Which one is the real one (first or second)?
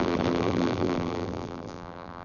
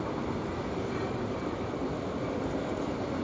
second